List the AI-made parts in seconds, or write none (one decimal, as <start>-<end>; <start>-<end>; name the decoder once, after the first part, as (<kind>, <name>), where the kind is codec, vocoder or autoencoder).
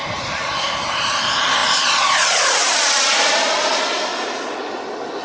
1.6-4.0 (vocoder, BigVGAN v2)